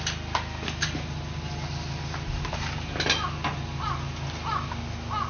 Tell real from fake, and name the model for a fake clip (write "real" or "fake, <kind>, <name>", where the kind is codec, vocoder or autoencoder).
real